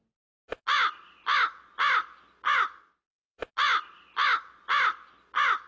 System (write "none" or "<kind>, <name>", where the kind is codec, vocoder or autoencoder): none